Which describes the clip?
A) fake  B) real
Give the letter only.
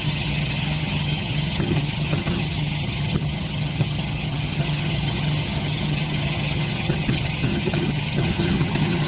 A